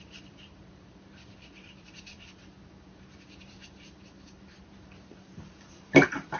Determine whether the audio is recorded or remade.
remade